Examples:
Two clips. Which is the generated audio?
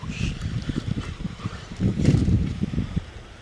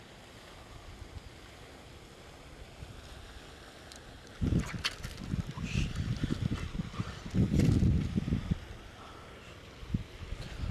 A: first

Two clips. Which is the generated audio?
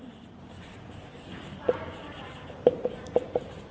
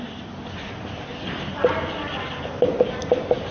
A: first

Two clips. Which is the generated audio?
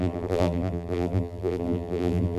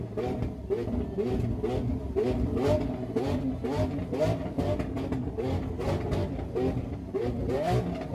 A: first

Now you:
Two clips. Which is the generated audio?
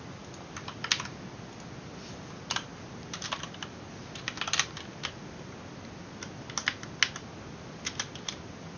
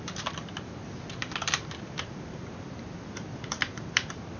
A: second